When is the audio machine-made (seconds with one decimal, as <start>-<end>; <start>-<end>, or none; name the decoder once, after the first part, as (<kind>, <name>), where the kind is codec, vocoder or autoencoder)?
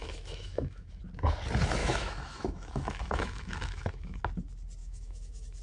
0.0-1.0 (autoencoder, DAC-VAE); 1.8-4.2; 4.8-5.6